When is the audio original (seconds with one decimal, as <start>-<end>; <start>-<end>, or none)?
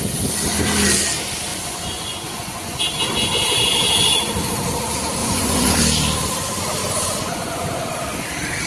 0.0-1.5; 2.8-5.2; 5.8-6.8; 7.8-8.7